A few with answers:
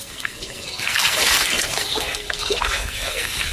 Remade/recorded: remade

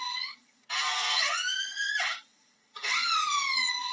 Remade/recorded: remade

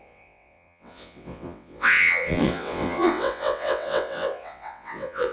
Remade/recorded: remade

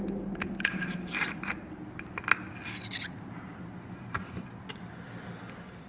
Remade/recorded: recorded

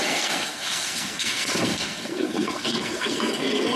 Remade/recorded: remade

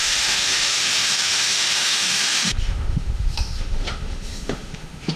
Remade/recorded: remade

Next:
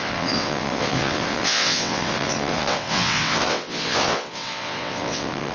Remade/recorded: remade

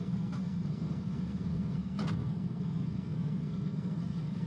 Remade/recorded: remade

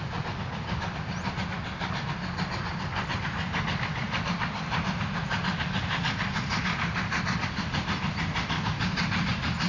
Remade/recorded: recorded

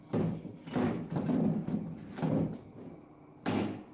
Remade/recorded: recorded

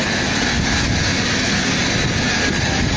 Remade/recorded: recorded